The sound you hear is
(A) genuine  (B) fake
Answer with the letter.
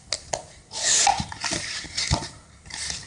A